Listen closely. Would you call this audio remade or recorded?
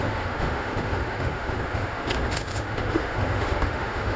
remade